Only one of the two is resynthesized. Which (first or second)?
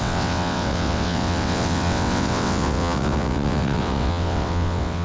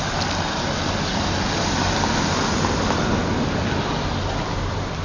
first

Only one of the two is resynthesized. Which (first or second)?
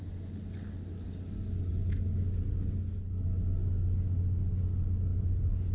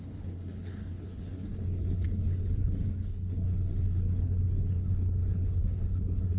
second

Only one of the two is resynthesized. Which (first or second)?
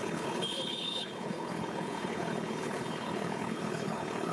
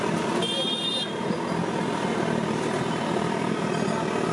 first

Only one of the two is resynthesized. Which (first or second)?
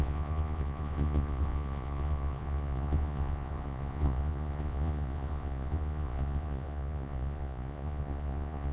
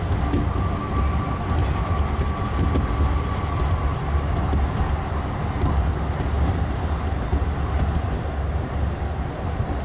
first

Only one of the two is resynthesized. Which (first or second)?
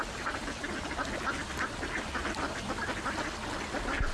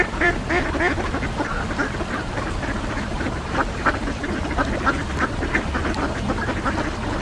second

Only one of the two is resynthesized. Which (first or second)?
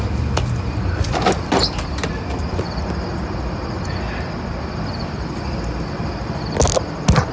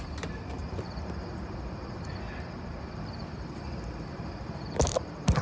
second